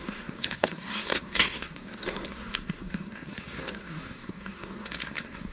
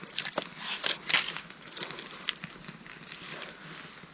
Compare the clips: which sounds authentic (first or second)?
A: second